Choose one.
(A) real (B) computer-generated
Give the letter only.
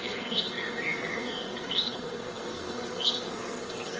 B